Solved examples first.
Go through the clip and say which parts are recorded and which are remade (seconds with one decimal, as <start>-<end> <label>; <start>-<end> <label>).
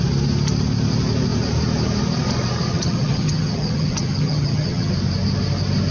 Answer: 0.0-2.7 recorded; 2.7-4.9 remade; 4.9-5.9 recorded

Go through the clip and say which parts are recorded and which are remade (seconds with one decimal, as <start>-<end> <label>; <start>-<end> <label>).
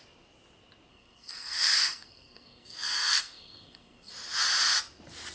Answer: 0.0-0.9 recorded; 0.9-4.1 remade; 4.1-5.3 recorded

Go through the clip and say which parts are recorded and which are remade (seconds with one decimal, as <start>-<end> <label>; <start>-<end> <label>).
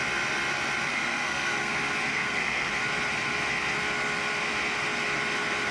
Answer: 0.0-0.9 recorded; 0.9-1.7 remade; 1.7-2.1 recorded; 2.1-2.7 remade; 2.7-5.7 recorded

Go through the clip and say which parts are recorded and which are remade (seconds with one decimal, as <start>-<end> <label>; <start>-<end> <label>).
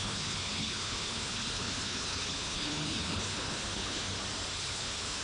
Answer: 0.0-4.1 remade; 4.1-4.6 recorded; 4.6-5.2 remade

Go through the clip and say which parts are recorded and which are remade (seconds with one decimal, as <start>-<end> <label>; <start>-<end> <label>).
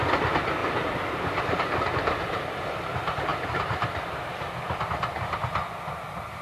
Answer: 0.0-0.6 recorded; 0.6-1.8 remade; 1.8-3.3 recorded; 3.3-4.3 remade; 4.3-6.4 recorded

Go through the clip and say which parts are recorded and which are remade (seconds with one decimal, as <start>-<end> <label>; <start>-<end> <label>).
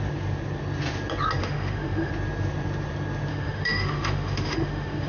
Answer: 0.0-1.4 recorded; 1.4-2.1 remade; 2.1-3.3 recorded; 3.3-5.1 remade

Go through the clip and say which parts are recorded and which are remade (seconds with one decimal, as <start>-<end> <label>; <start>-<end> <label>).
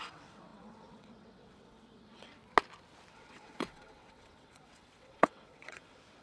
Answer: 0.0-2.4 remade; 2.4-3.1 recorded; 3.1-6.2 remade